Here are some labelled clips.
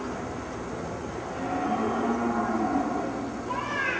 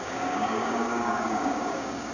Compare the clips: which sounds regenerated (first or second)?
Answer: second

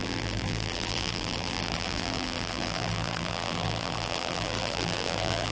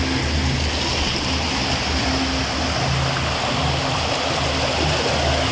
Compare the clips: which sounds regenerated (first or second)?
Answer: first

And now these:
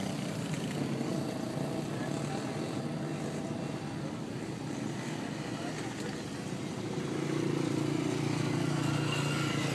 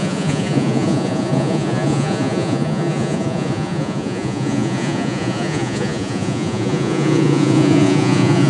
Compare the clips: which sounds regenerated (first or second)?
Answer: second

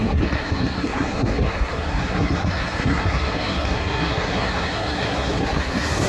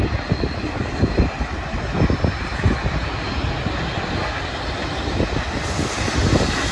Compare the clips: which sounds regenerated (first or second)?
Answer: first